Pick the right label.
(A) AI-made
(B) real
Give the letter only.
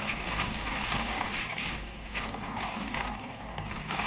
A